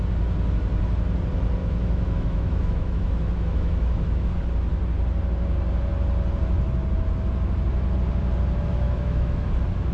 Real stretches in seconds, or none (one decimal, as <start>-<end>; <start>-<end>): 0.0-1.6; 4.3-8.7; 9.5-9.9